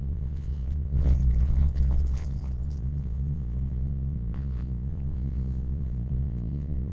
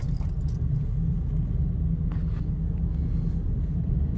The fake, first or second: first